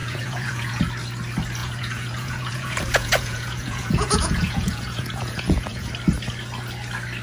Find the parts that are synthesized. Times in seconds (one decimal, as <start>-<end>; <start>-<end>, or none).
0.0-0.8; 1.6-5.9